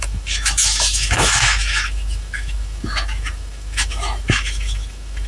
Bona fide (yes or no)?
no